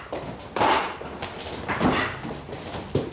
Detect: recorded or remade recorded